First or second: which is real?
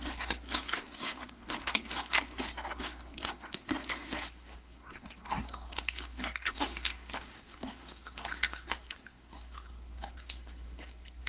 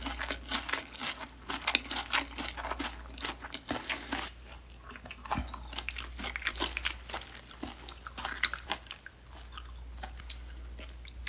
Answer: second